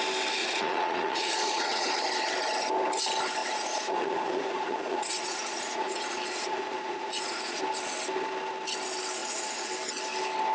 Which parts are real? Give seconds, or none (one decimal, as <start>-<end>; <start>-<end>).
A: 0.0-0.4; 1.9-3.4; 7.6-9.2; 9.7-10.5